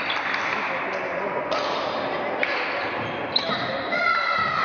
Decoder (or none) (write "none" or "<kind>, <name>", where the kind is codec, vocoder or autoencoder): none